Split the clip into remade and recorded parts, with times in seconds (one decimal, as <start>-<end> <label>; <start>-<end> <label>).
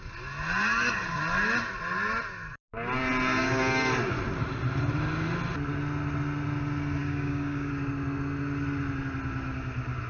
0.0-3.4 recorded; 3.4-3.9 remade; 3.9-7.0 recorded; 7.0-7.7 remade; 7.7-10.1 recorded